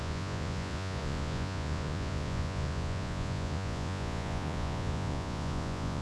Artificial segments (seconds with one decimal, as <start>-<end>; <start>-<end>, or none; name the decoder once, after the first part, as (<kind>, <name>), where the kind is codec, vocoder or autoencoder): 0.0-6.0 (vocoder, Vocos)